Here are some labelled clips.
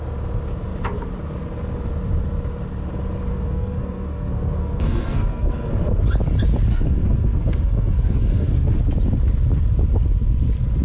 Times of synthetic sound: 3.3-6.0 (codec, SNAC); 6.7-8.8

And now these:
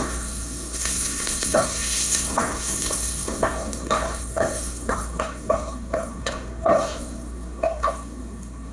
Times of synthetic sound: 0.0-8.7 (codec, SNAC)

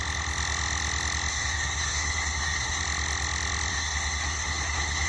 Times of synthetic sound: 1.3-2.8 (codec, SNAC); 3.7-5.1

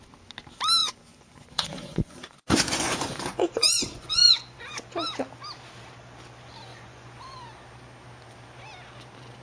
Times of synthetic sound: 0.8-4.8 (vocoder, Vocos); 6.7-7.2